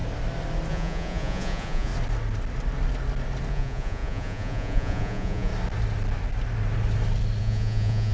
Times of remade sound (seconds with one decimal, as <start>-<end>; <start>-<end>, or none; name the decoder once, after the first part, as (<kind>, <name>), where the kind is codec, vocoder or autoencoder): 0.7-1.9 (vocoder, Vocos); 3.5-5.5; 7.4-8.1